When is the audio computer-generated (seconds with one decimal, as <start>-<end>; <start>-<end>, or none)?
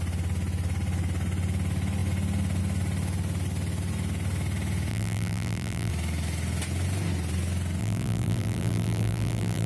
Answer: 4.9-5.9; 7.8-9.7